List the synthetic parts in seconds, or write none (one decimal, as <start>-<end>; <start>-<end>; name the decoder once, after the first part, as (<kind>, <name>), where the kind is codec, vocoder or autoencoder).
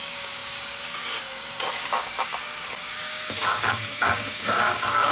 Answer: 0.0-5.1 (codec, DAC)